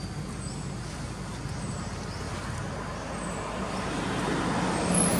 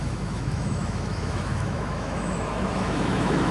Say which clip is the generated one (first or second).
second